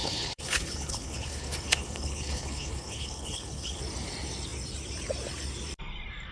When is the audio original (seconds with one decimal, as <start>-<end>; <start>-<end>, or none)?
3.8-6.3